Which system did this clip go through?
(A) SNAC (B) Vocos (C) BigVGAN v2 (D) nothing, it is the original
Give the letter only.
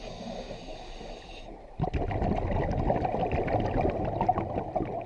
D